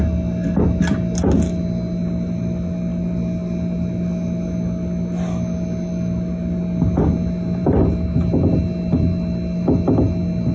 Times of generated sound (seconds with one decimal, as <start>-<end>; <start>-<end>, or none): none